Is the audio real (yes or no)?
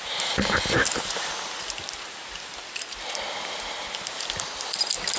yes